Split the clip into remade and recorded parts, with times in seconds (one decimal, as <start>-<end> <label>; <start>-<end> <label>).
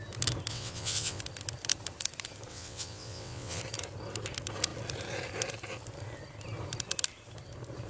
0.0-0.5 recorded; 0.5-1.2 remade; 1.2-2.5 recorded; 2.5-3.6 remade; 3.6-7.9 recorded